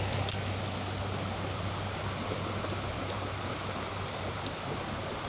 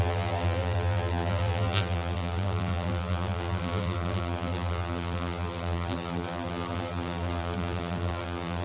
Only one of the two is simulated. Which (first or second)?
second